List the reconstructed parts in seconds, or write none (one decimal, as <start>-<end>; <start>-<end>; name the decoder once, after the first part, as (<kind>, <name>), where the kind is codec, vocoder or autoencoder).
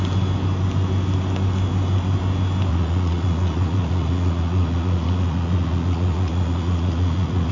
2.7-7.5 (vocoder, Vocos)